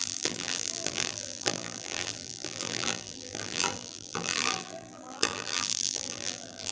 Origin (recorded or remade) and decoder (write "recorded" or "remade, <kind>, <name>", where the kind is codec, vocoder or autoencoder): remade, vocoder, BigVGAN v2